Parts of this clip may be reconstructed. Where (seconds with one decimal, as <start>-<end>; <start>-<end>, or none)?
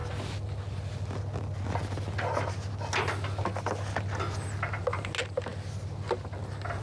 none